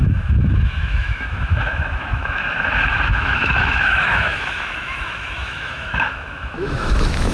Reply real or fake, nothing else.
fake